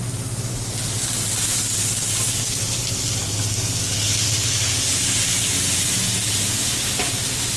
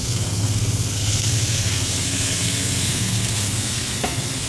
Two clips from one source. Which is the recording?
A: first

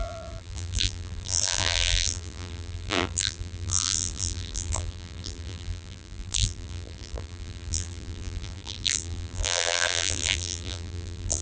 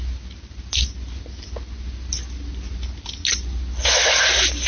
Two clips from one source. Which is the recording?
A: second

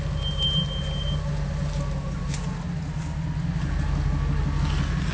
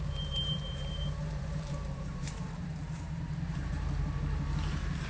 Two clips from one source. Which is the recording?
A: first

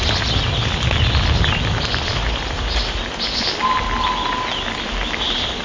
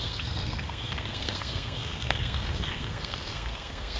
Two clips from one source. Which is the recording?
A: first